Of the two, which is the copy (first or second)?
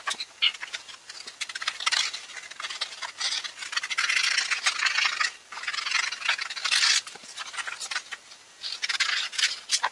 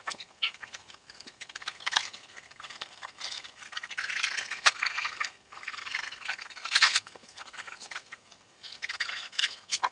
second